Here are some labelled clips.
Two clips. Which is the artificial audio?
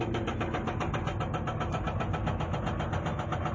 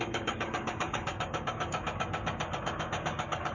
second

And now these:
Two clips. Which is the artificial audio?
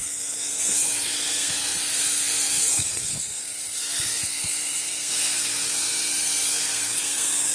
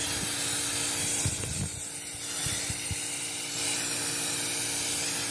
first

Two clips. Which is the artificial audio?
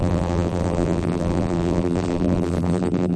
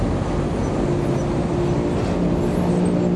first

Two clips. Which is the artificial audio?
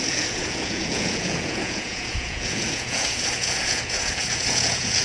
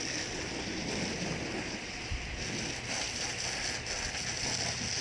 first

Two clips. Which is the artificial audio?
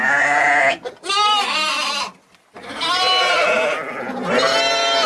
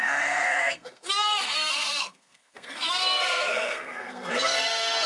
second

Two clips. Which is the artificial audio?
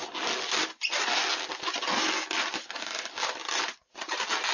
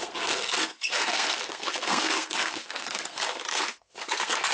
second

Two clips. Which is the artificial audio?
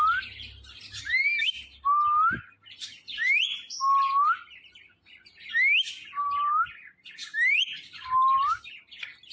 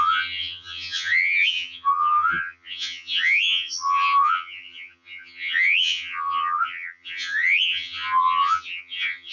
second